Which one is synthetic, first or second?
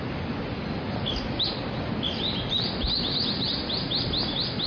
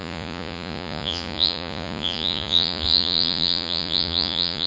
second